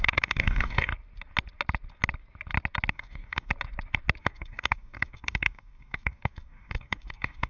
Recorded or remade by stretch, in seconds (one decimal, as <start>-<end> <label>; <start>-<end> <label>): 0.0-0.9 remade; 0.9-2.9 recorded; 2.9-3.5 remade; 3.5-4.2 recorded; 4.2-7.5 remade